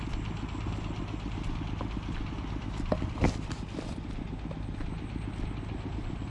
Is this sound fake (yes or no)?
no